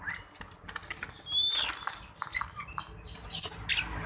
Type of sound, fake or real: real